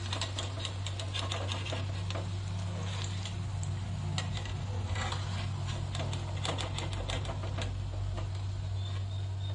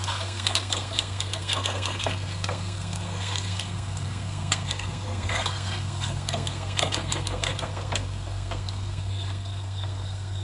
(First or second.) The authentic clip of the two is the first